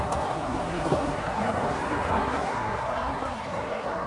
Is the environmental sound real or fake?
fake